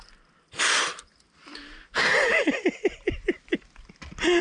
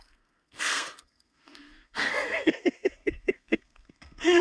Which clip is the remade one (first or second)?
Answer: second